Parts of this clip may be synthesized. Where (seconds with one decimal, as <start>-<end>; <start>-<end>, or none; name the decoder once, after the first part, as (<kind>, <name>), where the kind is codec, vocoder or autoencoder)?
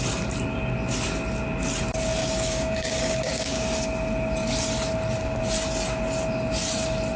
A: 2.2-3.6 (codec, DAC)